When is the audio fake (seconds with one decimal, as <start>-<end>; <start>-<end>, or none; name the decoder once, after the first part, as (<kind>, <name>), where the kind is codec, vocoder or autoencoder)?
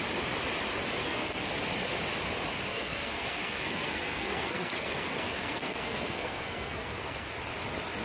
1.0-1.5 (codec, SNAC); 2.7-7.3